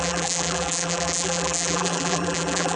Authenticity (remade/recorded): remade